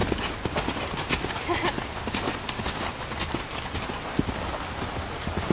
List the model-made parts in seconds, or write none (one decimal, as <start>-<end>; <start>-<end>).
none